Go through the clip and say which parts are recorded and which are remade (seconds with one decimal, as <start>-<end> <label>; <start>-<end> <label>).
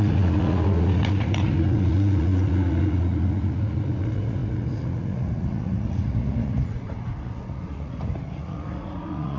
0.0-9.4 remade